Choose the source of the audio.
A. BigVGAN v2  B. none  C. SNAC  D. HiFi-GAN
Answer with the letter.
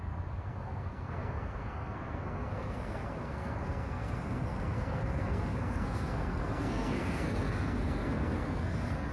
C